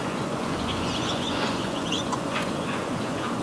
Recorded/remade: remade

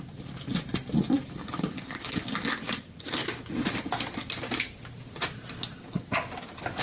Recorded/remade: recorded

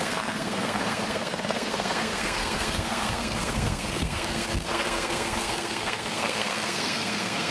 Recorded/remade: remade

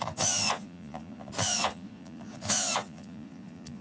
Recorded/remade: remade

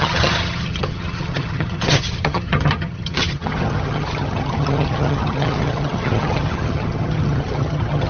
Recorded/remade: remade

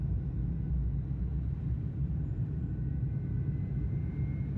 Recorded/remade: recorded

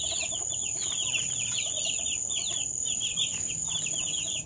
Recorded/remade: recorded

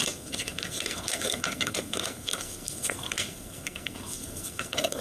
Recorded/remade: remade